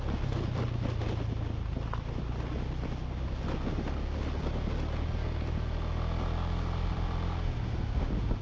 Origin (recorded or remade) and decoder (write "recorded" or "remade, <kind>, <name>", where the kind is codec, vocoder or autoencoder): recorded